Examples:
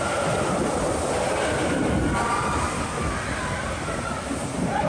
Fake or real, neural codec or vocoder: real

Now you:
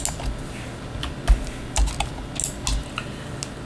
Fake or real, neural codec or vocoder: real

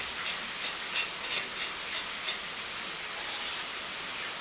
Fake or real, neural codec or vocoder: real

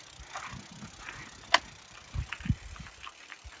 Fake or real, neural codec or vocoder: real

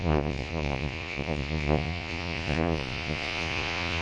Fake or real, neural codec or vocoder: fake, vocoder, Vocos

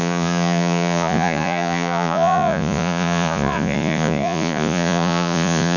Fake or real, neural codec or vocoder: fake, vocoder, Vocos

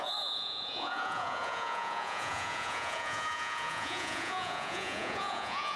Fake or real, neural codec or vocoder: fake, vocoder, Vocos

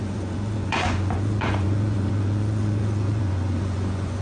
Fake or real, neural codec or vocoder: fake, vocoder, Vocos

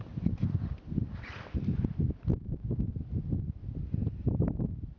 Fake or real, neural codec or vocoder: real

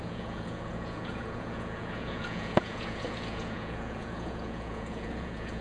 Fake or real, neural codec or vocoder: fake, vocoder, Vocos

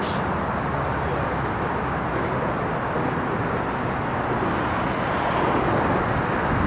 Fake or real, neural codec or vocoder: real